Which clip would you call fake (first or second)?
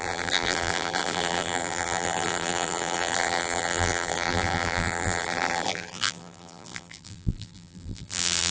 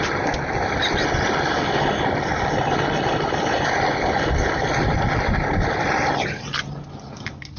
first